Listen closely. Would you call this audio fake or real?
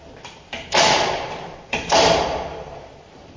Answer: fake